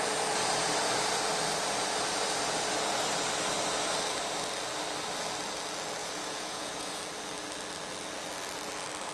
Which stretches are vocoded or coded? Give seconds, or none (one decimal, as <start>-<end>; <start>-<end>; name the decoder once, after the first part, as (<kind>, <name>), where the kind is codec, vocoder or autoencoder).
6.0-7.0 (vocoder, Vocos)

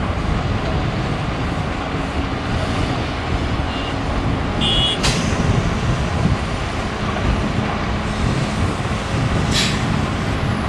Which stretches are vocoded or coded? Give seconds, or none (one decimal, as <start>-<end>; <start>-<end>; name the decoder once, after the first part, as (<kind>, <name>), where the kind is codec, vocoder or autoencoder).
2.3-3.9 (vocoder, Vocos)

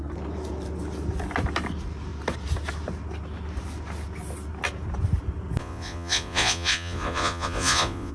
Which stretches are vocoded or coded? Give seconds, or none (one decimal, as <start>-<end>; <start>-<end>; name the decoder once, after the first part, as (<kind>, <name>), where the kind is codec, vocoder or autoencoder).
5.6-8.1 (vocoder, Vocos)

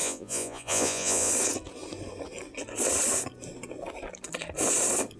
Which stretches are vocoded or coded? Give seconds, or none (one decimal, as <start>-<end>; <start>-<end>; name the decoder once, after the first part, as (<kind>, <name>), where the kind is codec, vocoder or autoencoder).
0.0-1.3 (vocoder, Vocos)